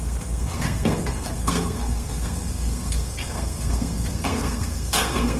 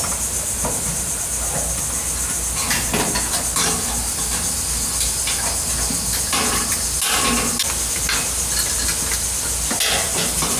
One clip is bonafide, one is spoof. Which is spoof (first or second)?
first